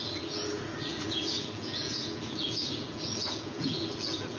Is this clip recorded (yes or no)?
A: no